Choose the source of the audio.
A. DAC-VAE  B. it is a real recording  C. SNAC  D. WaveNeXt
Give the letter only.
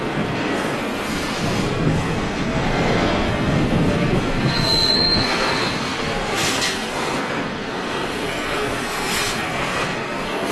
C